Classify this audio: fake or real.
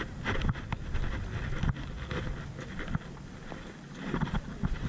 real